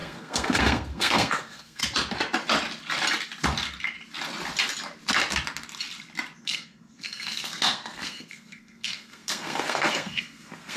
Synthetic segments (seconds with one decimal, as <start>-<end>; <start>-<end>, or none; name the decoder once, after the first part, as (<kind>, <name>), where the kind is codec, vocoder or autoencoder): 0.0-1.8 (codec, SNAC); 6.4-10.8